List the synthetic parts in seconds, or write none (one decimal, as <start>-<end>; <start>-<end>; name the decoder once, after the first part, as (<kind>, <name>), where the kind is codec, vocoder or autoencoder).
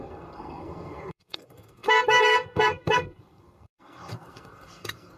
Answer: 0.0-5.2 (codec, SNAC)